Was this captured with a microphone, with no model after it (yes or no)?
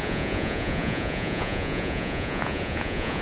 no